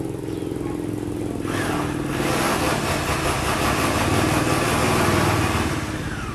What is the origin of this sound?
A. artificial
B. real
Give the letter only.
B